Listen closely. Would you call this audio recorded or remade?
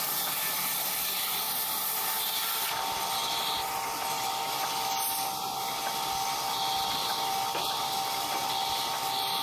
recorded